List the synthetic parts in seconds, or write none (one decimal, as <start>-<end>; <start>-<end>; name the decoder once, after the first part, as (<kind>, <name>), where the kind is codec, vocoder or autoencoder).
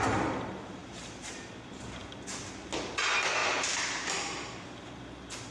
0.8-1.5 (vocoder, BigVGAN v2); 3.4-4.1